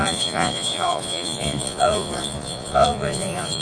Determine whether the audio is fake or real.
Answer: fake